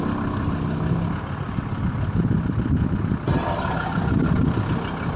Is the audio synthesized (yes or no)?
yes